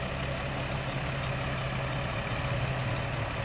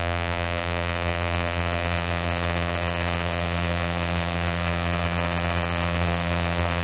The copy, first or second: second